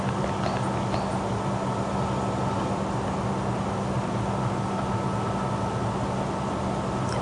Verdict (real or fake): real